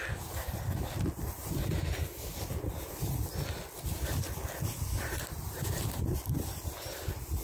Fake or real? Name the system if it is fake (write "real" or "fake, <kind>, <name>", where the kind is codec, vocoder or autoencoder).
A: real